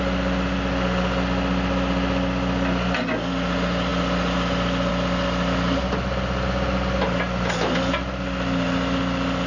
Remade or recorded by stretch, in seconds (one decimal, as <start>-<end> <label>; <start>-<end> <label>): 0.0-9.5 recorded